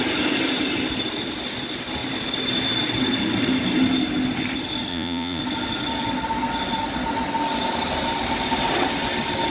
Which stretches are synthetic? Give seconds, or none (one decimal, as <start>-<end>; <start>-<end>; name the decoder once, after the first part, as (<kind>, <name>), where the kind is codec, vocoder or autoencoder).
4.9-5.4 (vocoder, Vocos)